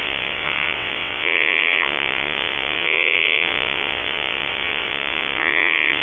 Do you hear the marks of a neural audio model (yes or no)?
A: yes